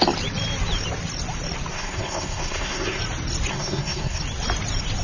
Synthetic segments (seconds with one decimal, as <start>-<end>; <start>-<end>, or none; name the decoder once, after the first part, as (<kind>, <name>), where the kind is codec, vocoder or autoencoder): 1.7-3.0 (codec, SNAC); 3.5-4.2